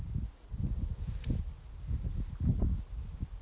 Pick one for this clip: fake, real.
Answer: real